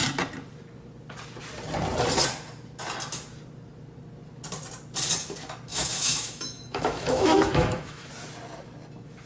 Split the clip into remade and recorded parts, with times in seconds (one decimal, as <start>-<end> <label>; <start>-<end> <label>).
0.0-5.7 recorded; 5.7-8.1 remade; 8.1-9.3 recorded